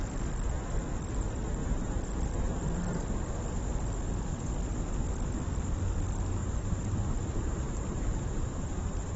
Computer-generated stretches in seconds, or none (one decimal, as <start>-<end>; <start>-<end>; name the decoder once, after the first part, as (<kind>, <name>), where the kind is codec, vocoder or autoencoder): 1.6-2.5 (vocoder, BigVGAN v2); 6.4-9.2